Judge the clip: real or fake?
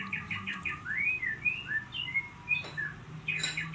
real